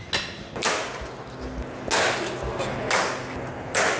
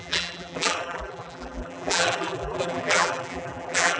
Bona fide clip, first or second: first